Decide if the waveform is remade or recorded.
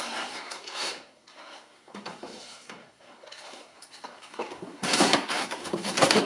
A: remade